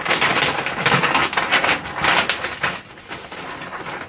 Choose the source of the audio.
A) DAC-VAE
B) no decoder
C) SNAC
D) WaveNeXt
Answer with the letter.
B